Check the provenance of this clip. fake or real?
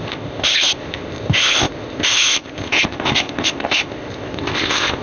fake